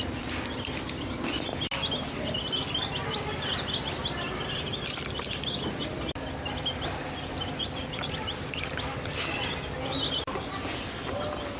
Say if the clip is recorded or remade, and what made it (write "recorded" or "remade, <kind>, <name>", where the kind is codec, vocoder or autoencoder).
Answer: recorded